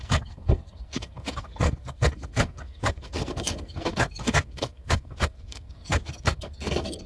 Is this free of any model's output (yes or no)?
no